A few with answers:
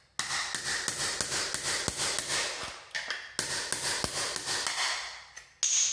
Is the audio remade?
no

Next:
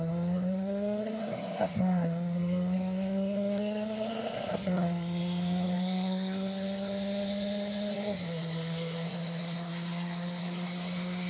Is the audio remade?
yes